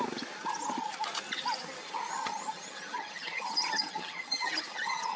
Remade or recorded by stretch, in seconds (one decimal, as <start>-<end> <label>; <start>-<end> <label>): 0.0-1.8 recorded; 1.8-5.2 remade